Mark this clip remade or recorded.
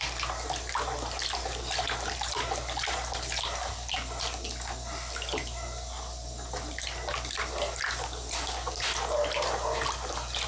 recorded